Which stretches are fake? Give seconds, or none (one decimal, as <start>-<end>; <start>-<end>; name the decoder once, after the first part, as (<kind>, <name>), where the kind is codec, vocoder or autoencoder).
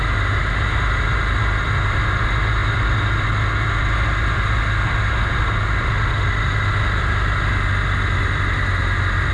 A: none